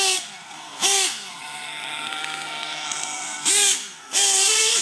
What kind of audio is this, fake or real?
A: fake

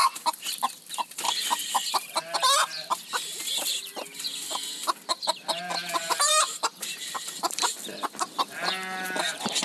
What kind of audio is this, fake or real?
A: real